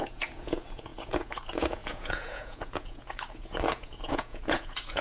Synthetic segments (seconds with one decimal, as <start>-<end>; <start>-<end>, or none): 0.0-5.0